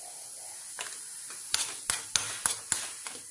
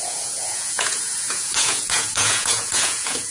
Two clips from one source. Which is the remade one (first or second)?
second